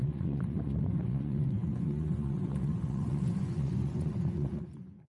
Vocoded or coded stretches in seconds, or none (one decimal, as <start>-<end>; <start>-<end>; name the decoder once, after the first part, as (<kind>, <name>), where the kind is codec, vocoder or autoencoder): 0.0-5.1 (vocoder, Vocos)